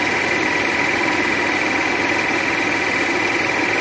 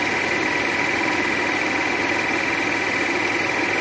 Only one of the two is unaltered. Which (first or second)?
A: second